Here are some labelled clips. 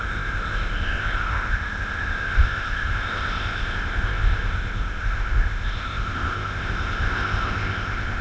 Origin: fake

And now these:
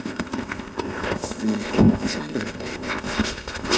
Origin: fake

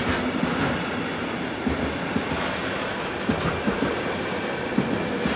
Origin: real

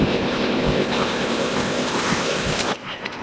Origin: fake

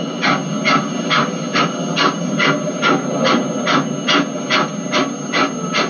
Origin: real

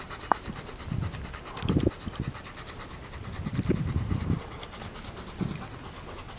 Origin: real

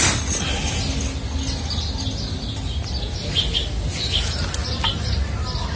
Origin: real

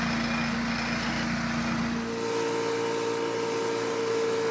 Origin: real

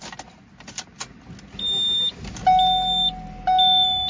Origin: real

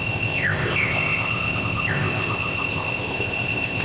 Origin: fake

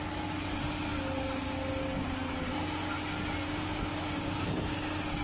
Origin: real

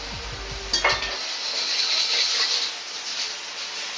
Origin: real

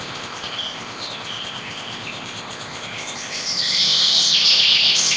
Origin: fake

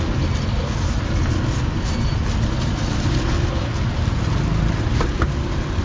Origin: real